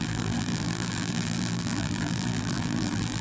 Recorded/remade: remade